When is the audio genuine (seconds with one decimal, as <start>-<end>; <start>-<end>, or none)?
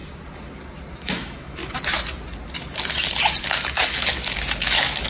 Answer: 0.0-0.9; 1.6-3.4